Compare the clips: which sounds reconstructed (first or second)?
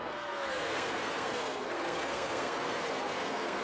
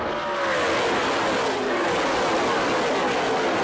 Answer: first